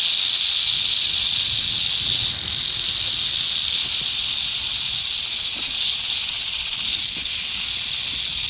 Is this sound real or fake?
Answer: real